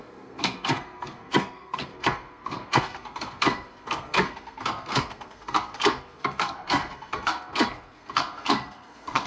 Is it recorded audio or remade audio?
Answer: remade